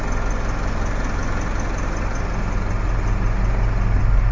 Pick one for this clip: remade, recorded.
recorded